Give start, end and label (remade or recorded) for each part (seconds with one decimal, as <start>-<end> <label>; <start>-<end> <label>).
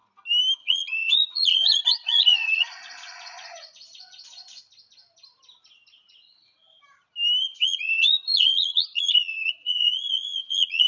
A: 0.0-0.6 recorded; 0.6-4.6 remade; 4.6-7.4 recorded; 7.4-10.9 remade